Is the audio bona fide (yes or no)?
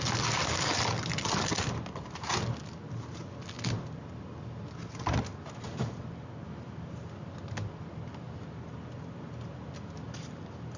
yes